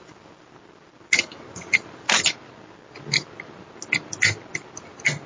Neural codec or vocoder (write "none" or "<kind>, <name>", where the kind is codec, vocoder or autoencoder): none